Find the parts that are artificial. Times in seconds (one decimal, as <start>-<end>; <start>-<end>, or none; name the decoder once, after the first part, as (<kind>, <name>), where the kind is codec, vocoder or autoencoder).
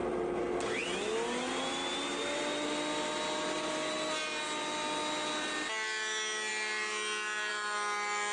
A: none